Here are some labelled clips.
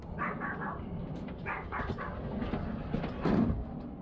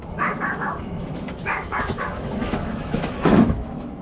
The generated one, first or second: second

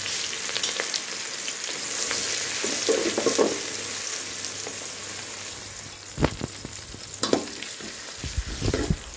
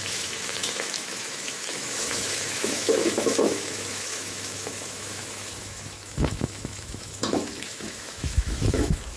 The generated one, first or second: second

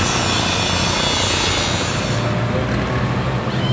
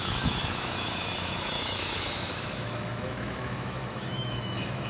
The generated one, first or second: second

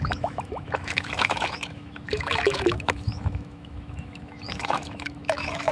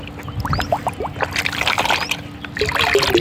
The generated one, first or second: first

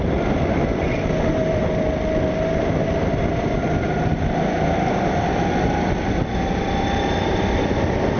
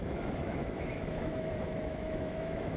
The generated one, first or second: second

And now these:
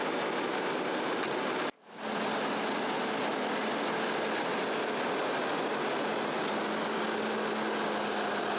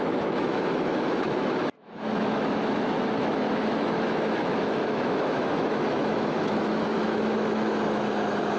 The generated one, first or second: second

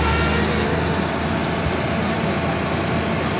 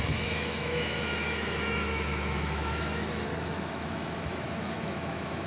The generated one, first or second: second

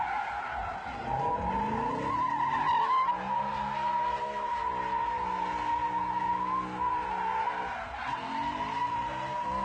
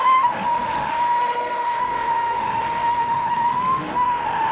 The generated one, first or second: second